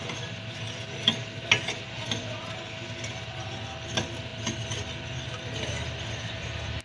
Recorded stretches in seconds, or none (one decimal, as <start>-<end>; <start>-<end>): 0.0-6.8